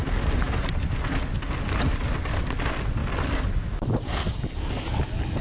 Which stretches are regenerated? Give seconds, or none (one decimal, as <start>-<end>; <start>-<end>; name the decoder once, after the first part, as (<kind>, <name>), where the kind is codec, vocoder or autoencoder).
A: none